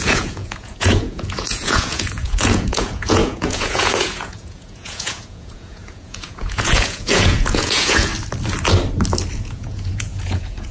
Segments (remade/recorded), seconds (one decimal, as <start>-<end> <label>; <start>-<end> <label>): 0.0-8.1 remade; 8.1-9.4 recorded; 9.4-10.7 remade